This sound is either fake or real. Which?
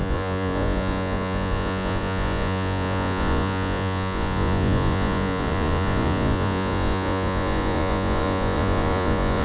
fake